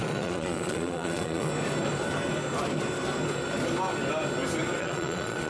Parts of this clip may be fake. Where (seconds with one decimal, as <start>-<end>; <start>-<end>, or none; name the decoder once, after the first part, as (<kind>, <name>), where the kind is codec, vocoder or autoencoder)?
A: 0.0-1.5 (vocoder, Vocos); 4.8-5.5